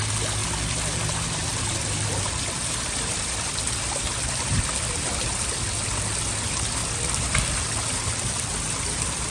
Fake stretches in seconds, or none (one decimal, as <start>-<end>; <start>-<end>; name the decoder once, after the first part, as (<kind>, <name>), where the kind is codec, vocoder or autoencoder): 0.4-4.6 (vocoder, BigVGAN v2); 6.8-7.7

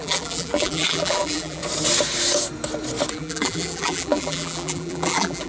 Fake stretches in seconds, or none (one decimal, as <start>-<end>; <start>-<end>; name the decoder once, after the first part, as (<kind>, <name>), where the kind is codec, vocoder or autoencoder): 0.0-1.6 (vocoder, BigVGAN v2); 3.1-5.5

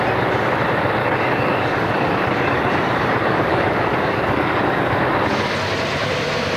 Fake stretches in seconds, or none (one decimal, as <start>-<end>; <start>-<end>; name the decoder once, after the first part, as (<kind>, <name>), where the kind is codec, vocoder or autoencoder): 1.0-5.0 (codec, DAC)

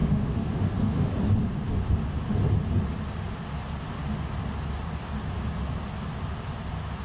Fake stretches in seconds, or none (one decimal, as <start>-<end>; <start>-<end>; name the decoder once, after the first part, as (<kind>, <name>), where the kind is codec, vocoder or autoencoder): 0.0-1.1 (autoencoder, DAC-VAE)

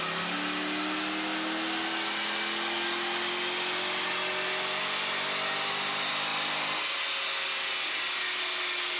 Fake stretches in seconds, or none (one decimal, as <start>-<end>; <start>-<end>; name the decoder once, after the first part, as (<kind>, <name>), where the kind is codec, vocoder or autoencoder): none

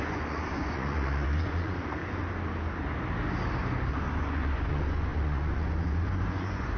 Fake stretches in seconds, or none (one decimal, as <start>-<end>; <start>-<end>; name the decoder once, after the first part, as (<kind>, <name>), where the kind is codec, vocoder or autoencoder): 0.0-2.0 (vocoder, Vocos); 3.9-6.8